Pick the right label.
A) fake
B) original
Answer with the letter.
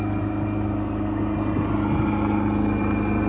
B